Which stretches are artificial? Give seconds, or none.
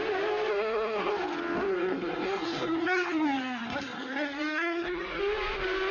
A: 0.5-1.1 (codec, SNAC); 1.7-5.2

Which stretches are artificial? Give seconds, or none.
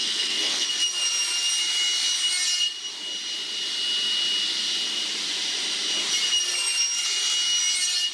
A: 0.0-0.7 (codec, SNAC)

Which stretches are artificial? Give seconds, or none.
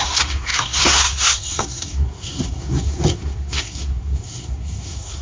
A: 0.0-5.2 (codec, SNAC)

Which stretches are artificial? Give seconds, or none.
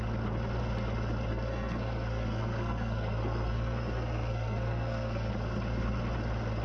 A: 1.3-5.3 (codec, SNAC)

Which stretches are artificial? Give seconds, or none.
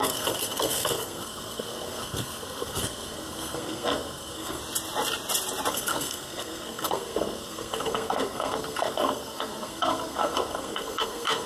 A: 0.0-4.6 (codec, SNAC); 5.7-11.5